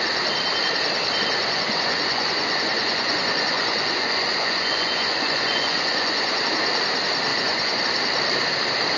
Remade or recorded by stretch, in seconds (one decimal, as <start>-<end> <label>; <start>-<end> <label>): 0.0-1.4 recorded; 1.4-6.4 remade; 6.4-7.3 recorded; 7.3-7.8 remade; 7.8-9.0 recorded